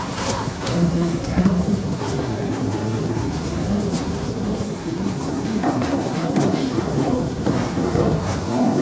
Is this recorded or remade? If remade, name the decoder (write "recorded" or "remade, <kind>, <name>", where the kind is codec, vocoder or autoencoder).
remade, codec, SNAC